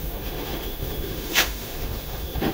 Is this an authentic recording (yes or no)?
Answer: no